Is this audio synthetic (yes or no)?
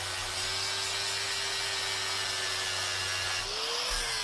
no